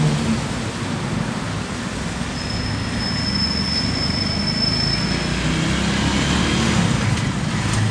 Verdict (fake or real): real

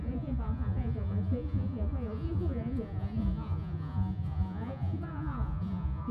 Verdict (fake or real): fake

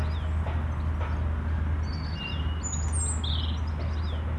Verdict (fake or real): real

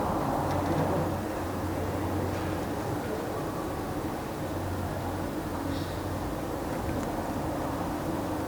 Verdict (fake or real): real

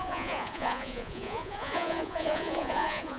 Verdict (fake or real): fake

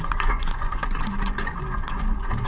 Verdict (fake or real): fake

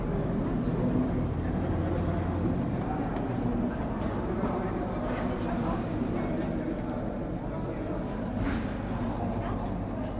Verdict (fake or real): real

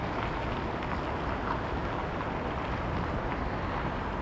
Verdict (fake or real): real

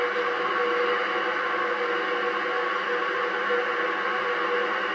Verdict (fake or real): real